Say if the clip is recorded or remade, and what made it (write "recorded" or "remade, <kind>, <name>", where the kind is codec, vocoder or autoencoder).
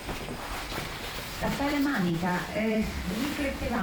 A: remade, vocoder, BigVGAN v2